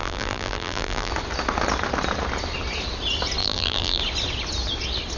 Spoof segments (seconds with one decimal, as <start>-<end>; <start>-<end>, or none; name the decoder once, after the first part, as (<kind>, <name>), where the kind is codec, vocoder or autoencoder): 0.0-1.1 (vocoder, BigVGAN v2); 3.4-4.0

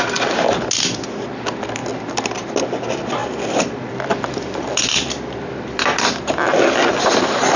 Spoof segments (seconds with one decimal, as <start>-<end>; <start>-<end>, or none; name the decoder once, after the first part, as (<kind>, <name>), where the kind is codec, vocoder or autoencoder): 1.8-2.6 (vocoder, BigVGAN v2); 3.2-6.2

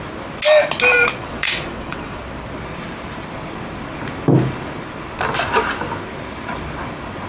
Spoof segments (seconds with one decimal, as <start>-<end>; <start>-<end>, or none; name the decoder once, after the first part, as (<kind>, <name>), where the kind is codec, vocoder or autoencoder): 1.2-2.2 (vocoder, WaveNeXt)

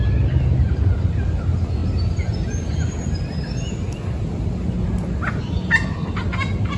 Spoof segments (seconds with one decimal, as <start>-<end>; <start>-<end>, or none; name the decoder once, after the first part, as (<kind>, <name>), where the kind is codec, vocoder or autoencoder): none